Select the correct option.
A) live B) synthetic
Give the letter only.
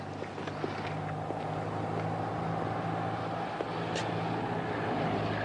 A